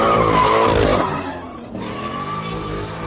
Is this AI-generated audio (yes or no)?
no